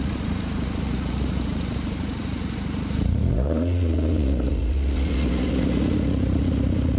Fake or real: fake